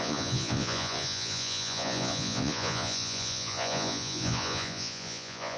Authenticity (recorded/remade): remade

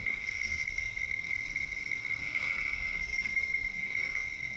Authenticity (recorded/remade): remade